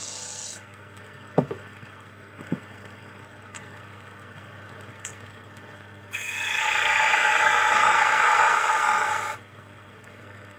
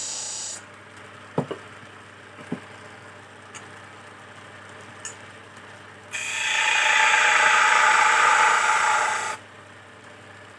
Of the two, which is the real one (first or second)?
second